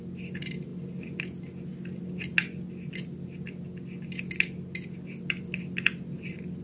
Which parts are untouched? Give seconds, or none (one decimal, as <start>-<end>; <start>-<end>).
0.0-6.6